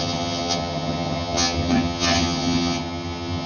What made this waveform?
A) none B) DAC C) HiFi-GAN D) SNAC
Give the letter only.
C